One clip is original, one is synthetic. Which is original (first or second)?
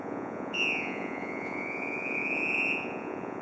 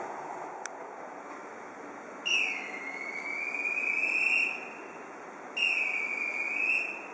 second